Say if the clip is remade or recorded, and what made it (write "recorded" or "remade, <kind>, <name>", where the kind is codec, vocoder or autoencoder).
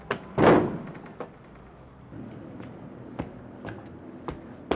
recorded